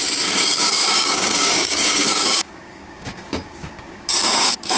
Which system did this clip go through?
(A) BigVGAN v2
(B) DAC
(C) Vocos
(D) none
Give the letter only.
B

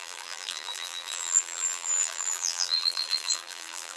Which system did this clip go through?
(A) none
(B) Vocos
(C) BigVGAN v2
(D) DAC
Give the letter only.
C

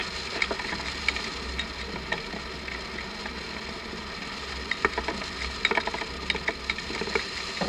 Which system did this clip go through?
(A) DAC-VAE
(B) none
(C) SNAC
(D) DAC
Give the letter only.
B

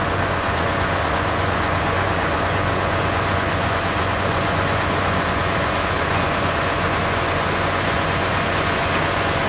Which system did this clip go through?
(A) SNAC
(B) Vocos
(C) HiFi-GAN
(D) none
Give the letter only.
B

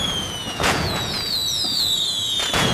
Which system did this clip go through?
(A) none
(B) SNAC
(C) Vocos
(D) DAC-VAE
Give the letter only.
C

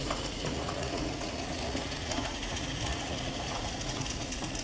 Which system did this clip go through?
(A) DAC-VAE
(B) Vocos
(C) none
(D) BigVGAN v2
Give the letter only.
B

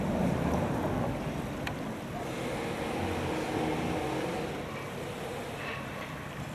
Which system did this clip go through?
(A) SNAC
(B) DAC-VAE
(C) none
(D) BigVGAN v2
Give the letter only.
C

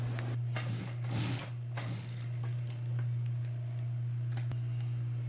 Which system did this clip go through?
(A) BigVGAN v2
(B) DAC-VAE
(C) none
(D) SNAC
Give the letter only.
C